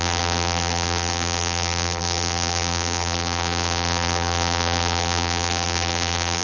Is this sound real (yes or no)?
no